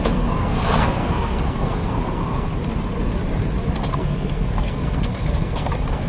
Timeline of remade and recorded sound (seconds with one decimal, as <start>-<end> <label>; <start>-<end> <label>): 0.0-2.5 remade; 2.5-3.9 recorded; 3.9-6.1 remade